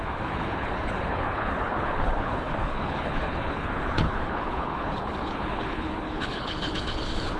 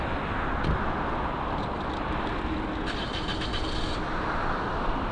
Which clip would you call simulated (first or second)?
first